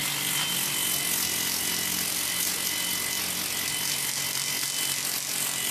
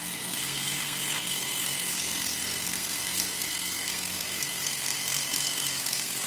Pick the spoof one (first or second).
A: second